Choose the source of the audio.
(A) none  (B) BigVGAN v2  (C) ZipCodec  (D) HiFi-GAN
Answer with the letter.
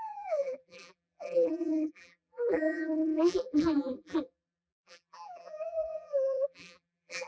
B